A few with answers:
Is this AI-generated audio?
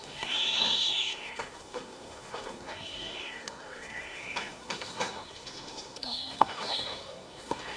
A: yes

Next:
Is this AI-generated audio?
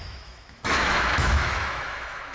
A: yes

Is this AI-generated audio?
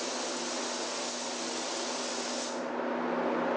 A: no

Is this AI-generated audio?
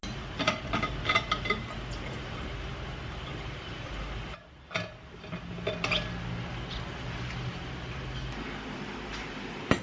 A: no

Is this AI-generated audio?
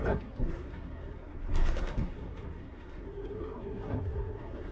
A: yes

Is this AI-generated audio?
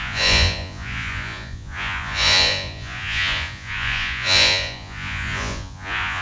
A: yes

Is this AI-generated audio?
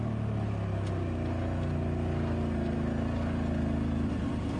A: no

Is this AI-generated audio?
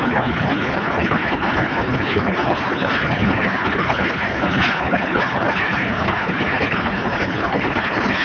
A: yes